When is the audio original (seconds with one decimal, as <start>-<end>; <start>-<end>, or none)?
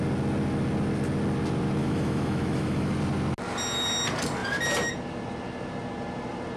0.0-1.8; 2.9-6.6